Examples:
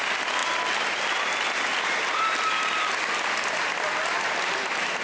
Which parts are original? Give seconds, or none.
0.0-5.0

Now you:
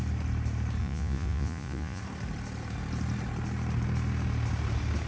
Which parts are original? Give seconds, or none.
0.0-0.8; 2.0-5.1

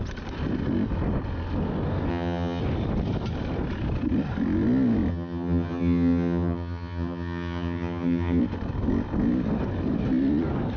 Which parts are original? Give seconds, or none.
0.0-2.1; 2.6-5.1; 8.4-10.8